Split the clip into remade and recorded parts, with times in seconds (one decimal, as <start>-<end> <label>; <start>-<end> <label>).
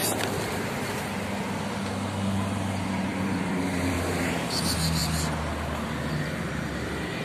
0.0-3.1 recorded; 3.1-4.3 remade; 4.3-7.2 recorded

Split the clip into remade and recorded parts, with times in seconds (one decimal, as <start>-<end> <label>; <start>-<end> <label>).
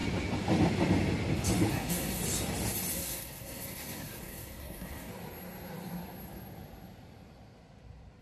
0.0-1.7 recorded; 1.7-2.2 remade; 2.2-2.9 recorded; 2.9-5.1 remade; 5.1-8.2 recorded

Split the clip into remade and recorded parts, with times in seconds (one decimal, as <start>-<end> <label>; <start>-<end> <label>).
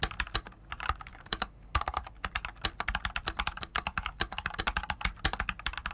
0.0-1.1 recorded; 1.1-2.3 remade; 2.3-3.7 recorded; 3.7-4.6 remade; 4.6-5.9 recorded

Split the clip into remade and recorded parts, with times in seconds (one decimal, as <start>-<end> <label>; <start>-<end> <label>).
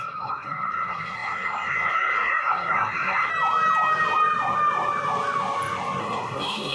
0.0-3.3 remade; 3.3-6.0 recorded; 6.0-6.7 remade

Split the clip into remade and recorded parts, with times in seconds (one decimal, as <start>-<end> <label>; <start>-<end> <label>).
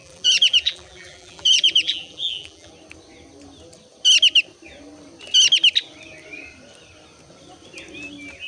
0.0-2.7 remade; 2.7-8.5 recorded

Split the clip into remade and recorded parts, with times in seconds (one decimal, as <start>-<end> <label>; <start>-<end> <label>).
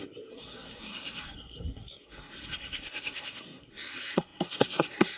0.0-5.2 remade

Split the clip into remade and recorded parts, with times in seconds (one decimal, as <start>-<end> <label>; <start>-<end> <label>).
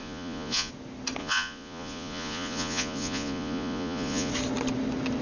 0.0-0.7 remade; 0.7-1.2 recorded; 1.2-4.3 remade; 4.3-5.2 recorded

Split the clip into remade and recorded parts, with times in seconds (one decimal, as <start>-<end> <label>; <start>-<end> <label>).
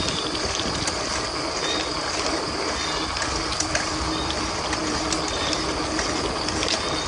0.0-7.1 recorded